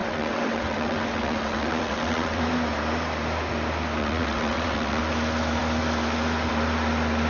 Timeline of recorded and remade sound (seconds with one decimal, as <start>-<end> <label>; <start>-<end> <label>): 0.0-2.4 remade; 2.4-4.0 recorded; 4.0-5.0 remade; 5.0-7.3 recorded

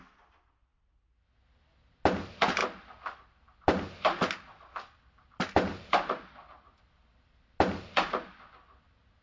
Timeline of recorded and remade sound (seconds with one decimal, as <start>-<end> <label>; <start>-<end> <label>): 0.0-9.2 recorded